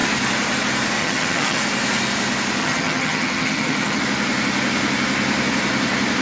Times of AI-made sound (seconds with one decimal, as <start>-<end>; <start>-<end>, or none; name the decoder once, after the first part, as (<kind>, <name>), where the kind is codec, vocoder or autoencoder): 1.0-1.6 (vocoder, HiFi-GAN); 2.6-4.0

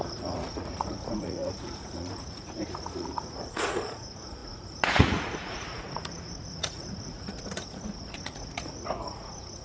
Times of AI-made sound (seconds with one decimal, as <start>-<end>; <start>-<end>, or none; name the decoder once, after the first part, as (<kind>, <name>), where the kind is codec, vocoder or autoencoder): 0.0-9.6 (vocoder, Vocos)